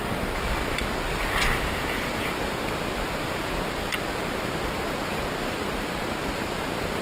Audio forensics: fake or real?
real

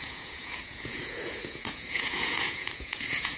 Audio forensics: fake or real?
fake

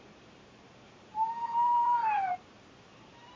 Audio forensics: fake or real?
fake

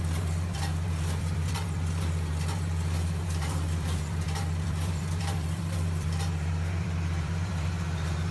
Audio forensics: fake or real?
fake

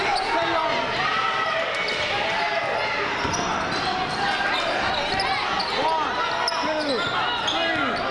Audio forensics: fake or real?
real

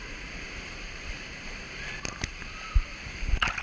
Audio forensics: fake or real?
real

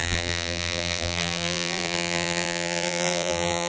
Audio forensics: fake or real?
fake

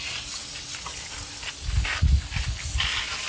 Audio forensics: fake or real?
real